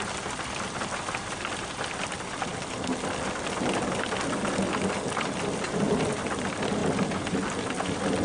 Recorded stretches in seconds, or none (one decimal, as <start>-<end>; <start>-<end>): 0.0-8.2